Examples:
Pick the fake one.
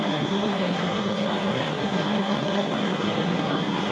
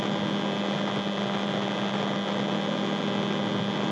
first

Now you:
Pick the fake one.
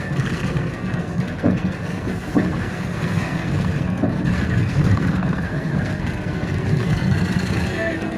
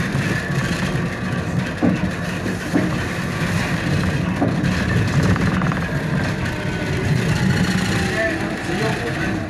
first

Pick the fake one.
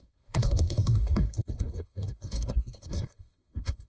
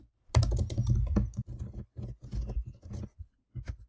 first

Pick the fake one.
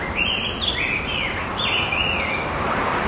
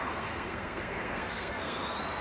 second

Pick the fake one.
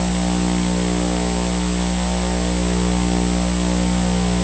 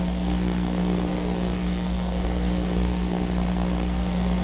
second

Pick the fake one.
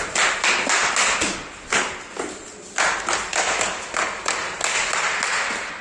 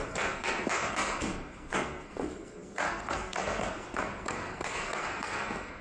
second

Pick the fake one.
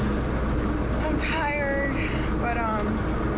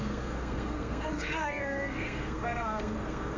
second